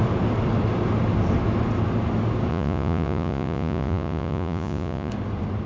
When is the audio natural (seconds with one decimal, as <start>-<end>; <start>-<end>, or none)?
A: 0.0-2.5; 5.1-5.7